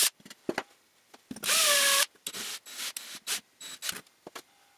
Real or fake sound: real